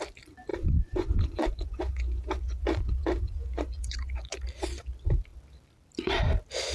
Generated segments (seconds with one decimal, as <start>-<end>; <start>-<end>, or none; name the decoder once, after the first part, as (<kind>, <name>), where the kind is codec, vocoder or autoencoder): 0.5-4.4 (vocoder, Vocos)